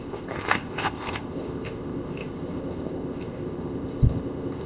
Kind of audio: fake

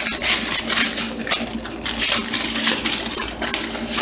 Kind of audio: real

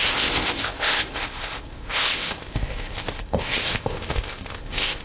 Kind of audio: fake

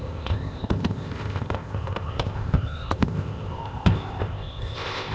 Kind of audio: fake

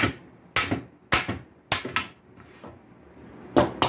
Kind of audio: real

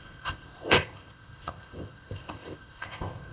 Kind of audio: fake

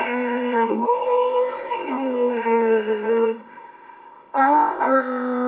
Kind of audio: fake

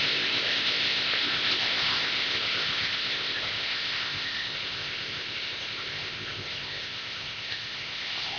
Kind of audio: fake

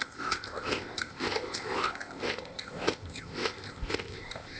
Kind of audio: fake